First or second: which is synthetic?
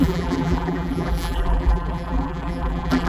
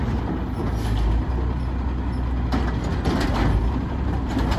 first